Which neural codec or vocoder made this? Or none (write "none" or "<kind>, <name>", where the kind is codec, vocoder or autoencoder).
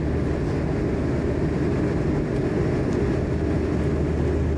none